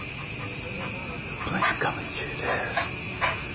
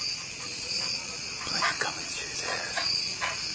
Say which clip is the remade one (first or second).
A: second